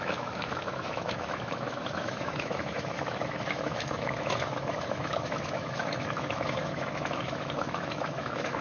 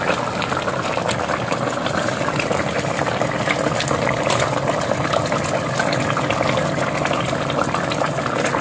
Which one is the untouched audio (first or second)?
second